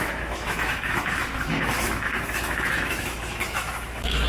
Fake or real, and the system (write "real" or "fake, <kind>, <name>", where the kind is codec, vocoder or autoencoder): fake, autoencoder, DAC-VAE